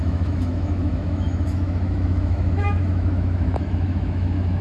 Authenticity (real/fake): fake